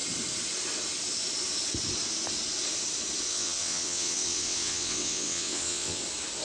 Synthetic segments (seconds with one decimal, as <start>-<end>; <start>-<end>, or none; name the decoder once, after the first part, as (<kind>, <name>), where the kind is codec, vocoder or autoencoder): 3.3-6.0 (vocoder, WaveNeXt)